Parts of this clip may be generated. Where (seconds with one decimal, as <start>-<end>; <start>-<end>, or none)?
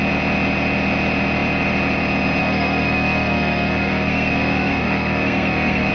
2.4-5.9